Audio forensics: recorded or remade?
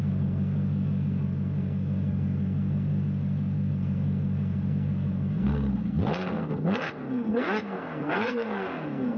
remade